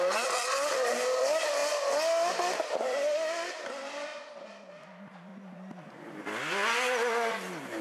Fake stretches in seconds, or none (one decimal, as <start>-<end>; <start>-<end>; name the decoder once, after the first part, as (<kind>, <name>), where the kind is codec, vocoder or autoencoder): 0.0-1.6 (vocoder, BigVGAN v2); 2.3-4.1; 4.8-5.3